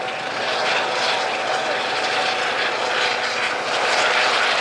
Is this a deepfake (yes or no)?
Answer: no